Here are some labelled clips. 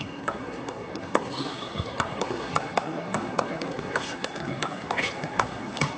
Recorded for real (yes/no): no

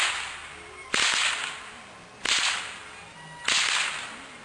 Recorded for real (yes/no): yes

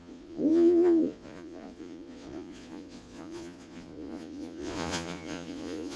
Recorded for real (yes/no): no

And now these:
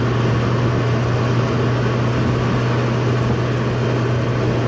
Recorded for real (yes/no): yes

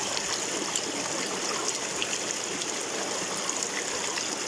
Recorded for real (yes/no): yes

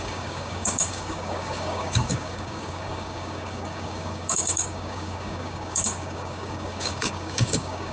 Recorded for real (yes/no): no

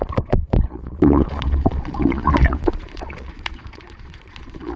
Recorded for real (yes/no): no